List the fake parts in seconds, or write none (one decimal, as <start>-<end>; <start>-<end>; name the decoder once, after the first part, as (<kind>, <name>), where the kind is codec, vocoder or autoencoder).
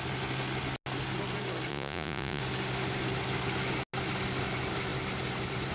1.7-2.4 (vocoder, Vocos)